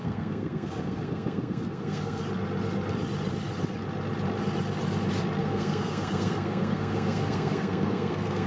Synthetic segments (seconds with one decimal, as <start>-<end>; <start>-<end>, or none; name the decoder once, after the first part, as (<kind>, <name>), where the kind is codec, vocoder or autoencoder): 0.0-2.2 (codec, SNAC); 5.4-8.5